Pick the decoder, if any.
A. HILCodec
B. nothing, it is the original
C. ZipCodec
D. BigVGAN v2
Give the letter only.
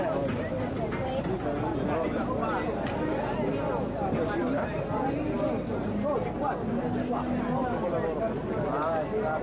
B